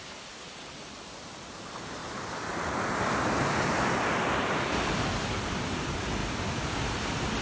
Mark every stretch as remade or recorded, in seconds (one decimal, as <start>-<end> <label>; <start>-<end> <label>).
0.0-7.4 recorded